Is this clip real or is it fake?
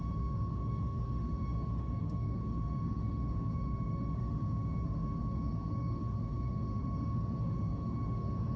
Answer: fake